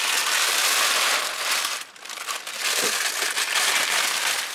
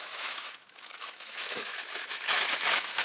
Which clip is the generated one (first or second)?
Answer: second